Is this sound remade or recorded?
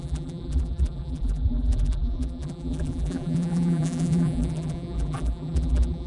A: remade